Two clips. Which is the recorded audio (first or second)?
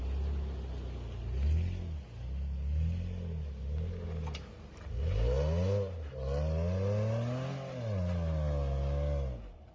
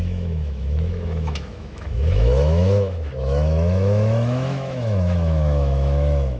first